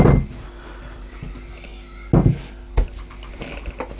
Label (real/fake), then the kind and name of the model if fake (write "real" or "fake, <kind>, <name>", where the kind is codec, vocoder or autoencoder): real